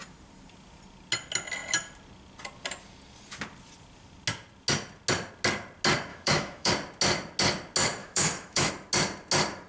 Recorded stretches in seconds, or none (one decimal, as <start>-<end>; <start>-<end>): 0.0-6.1; 6.7-8.0; 8.7-9.7